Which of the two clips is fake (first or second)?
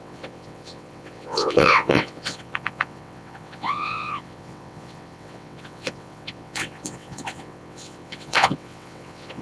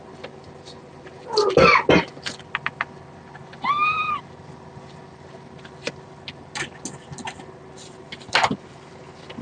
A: first